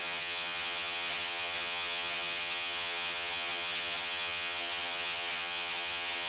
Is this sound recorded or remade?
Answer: remade